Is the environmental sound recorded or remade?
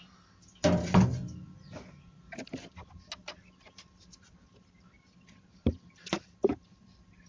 recorded